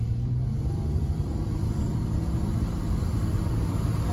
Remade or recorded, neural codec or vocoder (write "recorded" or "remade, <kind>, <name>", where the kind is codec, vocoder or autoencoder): remade, vocoder, BigVGAN v2